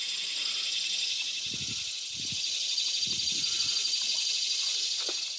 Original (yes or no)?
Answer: yes